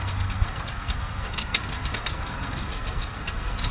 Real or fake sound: fake